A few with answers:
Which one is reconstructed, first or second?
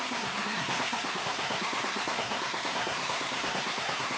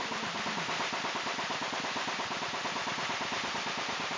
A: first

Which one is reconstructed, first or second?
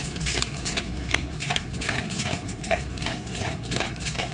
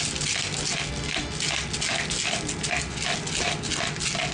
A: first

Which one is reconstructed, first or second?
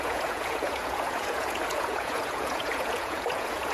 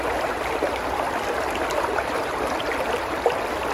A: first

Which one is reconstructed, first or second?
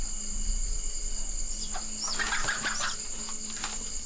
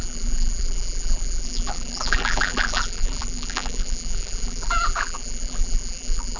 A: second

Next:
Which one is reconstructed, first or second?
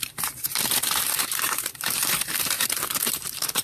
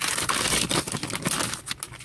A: first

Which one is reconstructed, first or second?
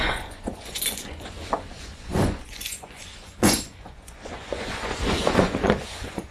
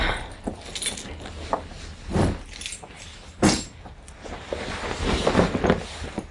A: first